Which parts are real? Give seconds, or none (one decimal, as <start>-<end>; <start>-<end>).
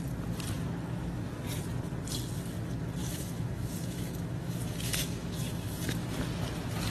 0.0-3.0; 6.2-6.9